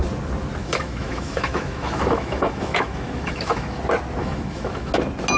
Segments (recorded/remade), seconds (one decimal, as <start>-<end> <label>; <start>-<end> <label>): 0.0-0.6 recorded; 0.6-3.8 remade; 3.8-4.2 recorded; 4.2-4.9 remade; 4.9-5.4 recorded